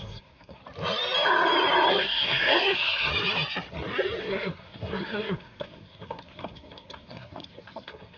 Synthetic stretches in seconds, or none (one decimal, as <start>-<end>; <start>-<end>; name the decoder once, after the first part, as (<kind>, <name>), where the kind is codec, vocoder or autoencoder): 0.0-0.6 (codec, SNAC); 1.9-3.1; 4.2-8.2